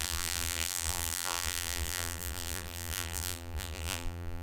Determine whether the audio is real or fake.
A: fake